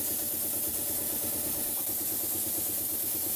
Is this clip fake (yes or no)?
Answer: no